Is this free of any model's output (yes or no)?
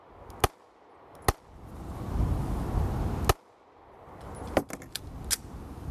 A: yes